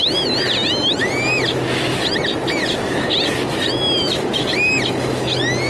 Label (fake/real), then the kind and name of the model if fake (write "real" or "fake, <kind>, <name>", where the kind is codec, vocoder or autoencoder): real